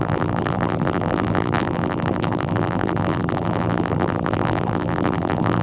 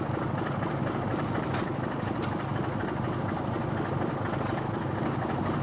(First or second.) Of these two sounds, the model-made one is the first